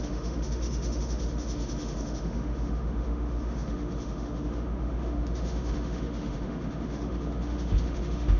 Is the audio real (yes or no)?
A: no